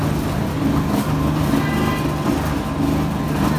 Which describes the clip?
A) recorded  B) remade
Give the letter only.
A